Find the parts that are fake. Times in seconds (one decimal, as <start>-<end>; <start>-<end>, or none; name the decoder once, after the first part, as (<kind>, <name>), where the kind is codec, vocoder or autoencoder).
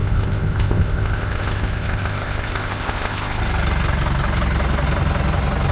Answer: 0.0-3.4 (codec, ZipCodec)